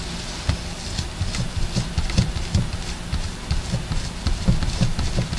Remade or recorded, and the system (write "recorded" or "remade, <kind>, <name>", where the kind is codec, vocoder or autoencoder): recorded